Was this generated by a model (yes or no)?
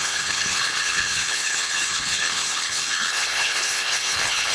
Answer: yes